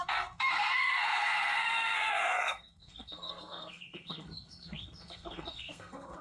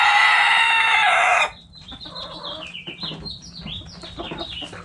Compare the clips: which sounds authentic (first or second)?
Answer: second